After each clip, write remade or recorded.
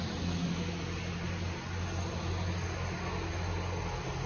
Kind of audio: recorded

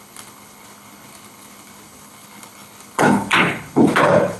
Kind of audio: remade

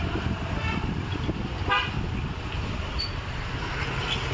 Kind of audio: recorded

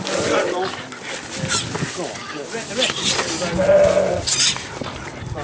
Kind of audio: recorded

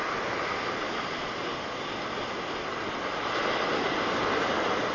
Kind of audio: recorded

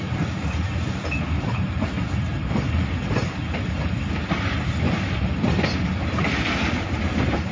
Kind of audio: recorded